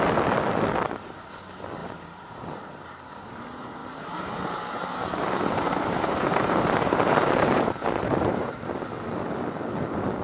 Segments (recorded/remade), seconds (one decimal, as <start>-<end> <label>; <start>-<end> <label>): 0.0-1.8 recorded; 1.8-3.3 remade; 3.3-3.8 recorded; 3.8-8.6 remade; 8.6-10.2 recorded